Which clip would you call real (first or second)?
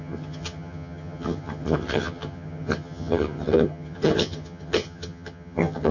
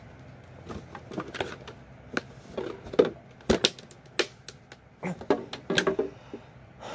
second